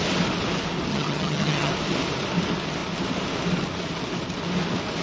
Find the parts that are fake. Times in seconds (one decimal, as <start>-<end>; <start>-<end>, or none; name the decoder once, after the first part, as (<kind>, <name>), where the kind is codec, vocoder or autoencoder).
0.9-1.7 (vocoder, HiFi-GAN)